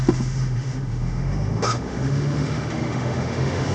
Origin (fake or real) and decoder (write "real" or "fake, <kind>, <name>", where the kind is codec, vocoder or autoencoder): fake, autoencoder, DAC-VAE